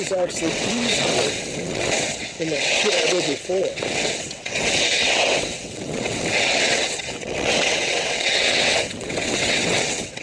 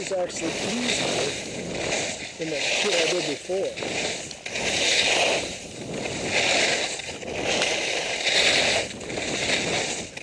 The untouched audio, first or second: second